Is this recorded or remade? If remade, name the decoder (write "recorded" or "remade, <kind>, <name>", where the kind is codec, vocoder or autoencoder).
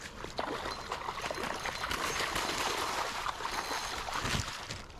recorded